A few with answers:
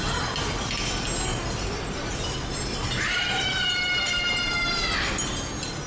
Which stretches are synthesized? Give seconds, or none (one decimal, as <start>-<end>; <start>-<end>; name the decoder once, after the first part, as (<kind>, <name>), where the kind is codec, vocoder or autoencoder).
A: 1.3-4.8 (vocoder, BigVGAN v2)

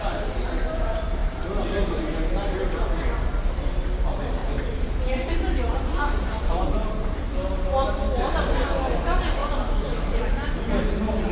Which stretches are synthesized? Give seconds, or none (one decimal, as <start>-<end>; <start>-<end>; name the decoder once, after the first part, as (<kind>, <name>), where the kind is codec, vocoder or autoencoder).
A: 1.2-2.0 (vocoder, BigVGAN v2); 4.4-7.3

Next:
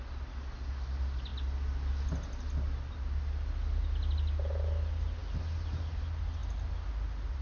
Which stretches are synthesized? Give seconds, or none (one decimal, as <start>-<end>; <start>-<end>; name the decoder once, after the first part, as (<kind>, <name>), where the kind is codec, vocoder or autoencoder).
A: none

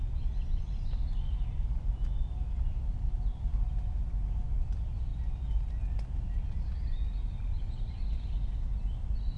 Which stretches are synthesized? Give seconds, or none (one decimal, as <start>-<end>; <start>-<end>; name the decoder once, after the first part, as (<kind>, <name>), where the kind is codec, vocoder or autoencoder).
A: 5.1-5.7 (vocoder, BigVGAN v2)

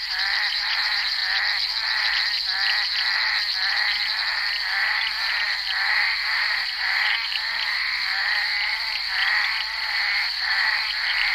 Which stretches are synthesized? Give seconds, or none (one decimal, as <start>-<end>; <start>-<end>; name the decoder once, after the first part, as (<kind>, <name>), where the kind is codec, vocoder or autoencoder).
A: 0.0-1.2 (vocoder, BigVGAN v2); 6.3-8.5; 10.4-11.3

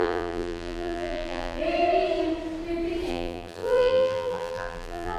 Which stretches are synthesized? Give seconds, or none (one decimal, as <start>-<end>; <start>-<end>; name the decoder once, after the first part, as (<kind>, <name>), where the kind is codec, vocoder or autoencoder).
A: 0.0-1.6 (vocoder, BigVGAN v2); 3.1-5.2

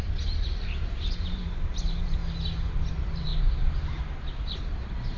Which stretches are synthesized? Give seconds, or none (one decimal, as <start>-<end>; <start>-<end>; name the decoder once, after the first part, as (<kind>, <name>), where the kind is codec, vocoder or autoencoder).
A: 0.0-2.2 (vocoder, BigVGAN v2); 2.9-3.3; 4.6-5.2